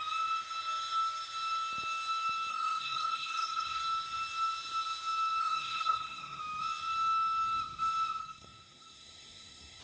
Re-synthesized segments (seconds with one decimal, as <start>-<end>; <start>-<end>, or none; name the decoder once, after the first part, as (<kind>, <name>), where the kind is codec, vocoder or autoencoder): 2.5-3.8 (codec, SNAC); 5.4-6.4; 8.2-9.8